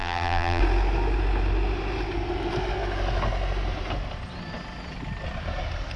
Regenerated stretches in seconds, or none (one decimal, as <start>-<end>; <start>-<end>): 0.0-0.6